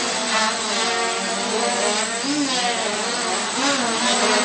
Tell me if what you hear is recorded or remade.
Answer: recorded